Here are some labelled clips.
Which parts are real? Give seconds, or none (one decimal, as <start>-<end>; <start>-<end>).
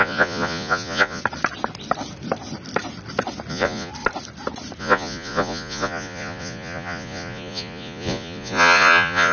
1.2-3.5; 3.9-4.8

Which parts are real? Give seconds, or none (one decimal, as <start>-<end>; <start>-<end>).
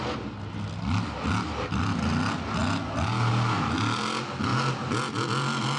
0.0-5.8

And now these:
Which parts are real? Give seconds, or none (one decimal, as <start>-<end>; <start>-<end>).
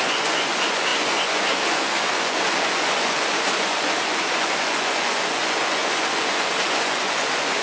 none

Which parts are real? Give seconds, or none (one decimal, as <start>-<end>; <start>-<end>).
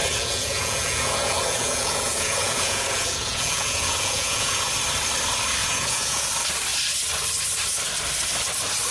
4.7-5.6; 6.3-8.9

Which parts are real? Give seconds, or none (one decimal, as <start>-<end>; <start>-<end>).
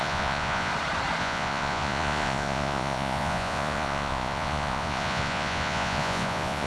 0.7-1.2